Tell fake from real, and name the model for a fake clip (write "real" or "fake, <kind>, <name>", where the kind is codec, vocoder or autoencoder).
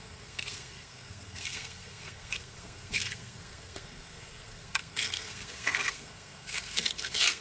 fake, codec, SNAC